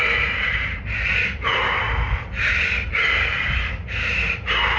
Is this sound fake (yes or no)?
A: yes